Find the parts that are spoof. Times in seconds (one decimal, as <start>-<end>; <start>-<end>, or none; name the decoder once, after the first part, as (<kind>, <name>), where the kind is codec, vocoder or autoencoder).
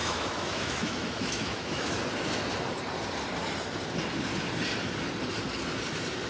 0.0-2.0 (autoencoder, DAC-VAE)